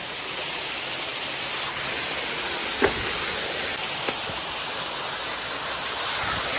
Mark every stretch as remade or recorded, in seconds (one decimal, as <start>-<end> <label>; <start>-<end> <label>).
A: 0.0-0.7 remade; 0.7-6.6 recorded